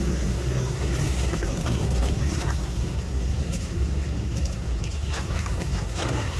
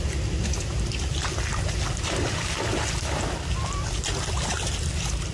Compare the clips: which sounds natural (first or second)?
second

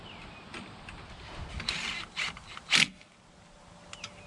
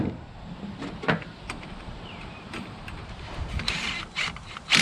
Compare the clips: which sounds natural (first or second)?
first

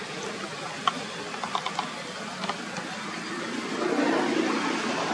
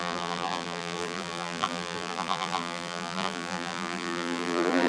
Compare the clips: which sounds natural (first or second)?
first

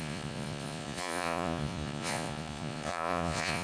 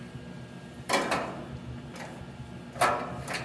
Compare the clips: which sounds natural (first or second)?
second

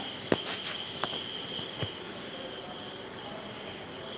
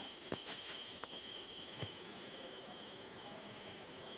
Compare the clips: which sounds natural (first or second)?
first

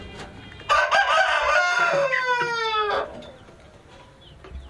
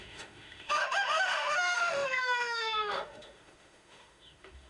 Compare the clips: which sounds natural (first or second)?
first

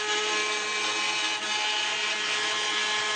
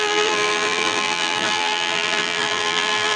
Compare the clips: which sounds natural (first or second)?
first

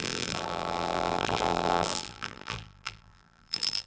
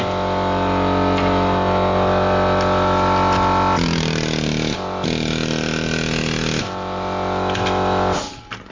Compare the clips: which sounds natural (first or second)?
second